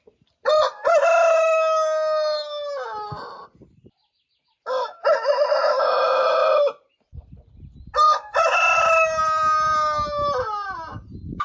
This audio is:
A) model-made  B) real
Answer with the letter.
B